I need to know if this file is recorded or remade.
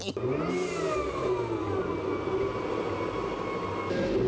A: recorded